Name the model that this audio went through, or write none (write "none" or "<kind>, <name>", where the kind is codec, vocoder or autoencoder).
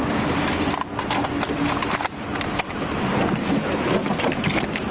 none